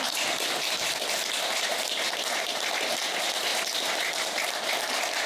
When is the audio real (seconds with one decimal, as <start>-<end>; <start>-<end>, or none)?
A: 0.0-5.3